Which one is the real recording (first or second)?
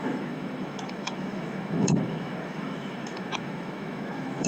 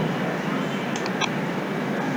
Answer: second